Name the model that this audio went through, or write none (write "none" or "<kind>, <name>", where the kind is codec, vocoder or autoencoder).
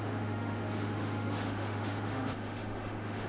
autoencoder, DAC-VAE